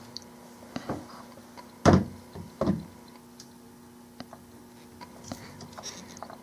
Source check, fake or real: real